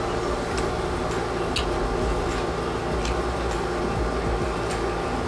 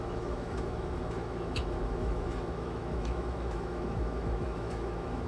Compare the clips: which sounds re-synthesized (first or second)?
second